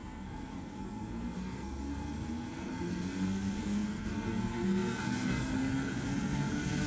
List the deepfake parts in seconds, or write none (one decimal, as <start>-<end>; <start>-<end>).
0.0-6.9